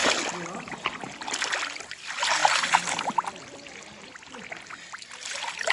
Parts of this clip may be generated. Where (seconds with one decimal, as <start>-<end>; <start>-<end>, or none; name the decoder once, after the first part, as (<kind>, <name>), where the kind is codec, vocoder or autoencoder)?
none